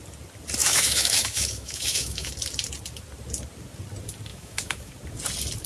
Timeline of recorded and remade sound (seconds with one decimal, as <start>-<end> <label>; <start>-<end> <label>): 0.0-0.6 recorded; 0.6-2.3 remade; 2.3-4.3 recorded; 4.3-4.9 remade; 4.9-5.7 recorded